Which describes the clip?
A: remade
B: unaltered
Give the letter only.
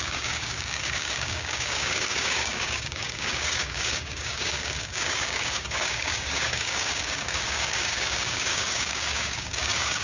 A